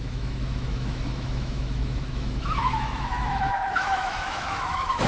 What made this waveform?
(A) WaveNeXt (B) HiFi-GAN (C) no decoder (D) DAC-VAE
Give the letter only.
D